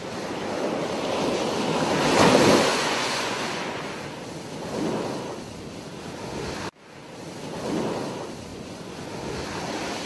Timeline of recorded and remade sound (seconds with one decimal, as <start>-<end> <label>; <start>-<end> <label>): 0.0-2.7 recorded; 2.7-3.8 remade; 3.8-8.5 recorded; 8.5-9.1 remade; 9.1-10.1 recorded